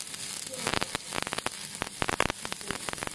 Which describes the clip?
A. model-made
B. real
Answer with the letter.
B